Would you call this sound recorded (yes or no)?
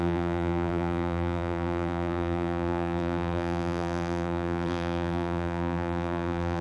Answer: no